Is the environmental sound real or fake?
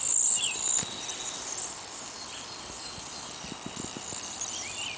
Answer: real